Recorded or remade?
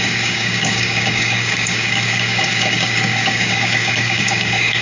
remade